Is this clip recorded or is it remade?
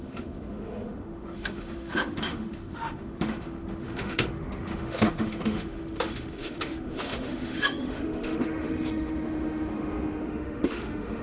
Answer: remade